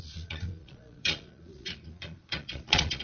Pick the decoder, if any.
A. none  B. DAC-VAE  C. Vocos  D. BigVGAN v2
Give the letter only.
C